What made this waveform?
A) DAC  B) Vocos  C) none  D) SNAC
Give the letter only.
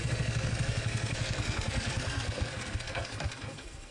D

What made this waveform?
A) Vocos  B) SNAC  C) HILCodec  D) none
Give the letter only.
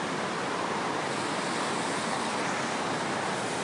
D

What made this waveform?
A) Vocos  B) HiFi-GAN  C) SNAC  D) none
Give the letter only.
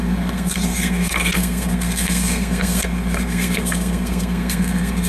C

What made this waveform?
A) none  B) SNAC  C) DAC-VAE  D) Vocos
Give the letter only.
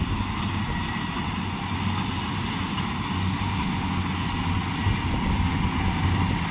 A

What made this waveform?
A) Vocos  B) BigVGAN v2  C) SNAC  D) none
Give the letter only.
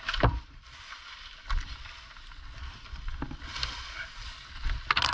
D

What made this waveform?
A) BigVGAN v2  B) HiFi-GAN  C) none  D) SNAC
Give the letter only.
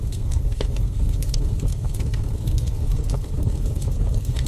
D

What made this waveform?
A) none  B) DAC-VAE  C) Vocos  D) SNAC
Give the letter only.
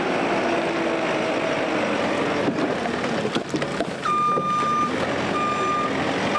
A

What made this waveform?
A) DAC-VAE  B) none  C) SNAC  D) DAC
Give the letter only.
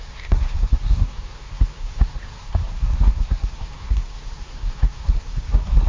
C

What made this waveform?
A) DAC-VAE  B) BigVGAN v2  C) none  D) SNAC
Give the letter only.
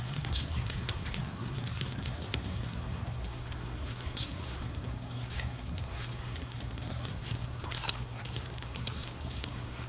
D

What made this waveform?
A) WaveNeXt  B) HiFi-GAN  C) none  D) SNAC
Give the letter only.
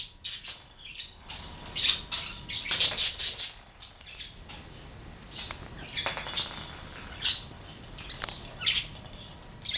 C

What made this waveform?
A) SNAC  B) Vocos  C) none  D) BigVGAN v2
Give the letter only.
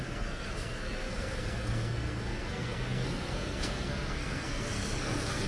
A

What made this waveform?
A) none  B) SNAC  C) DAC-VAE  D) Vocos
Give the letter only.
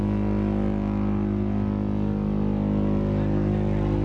A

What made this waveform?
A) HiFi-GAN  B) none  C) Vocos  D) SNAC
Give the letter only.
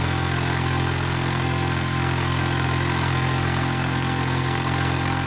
D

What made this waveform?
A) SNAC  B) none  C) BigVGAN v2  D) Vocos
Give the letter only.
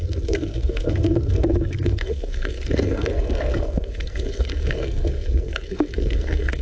A